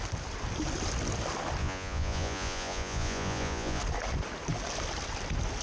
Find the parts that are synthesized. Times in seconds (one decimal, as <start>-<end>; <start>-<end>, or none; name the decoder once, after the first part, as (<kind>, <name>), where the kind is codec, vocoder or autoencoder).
1.6-3.8 (vocoder, Vocos)